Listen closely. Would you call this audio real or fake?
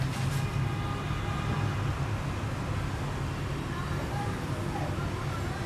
real